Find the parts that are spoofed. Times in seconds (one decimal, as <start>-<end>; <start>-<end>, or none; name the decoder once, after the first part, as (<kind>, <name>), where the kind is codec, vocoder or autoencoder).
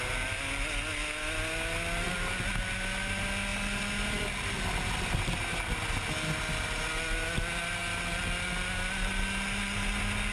none